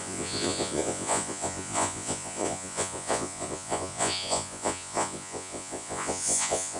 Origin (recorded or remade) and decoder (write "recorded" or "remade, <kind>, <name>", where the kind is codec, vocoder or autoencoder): remade, vocoder, Vocos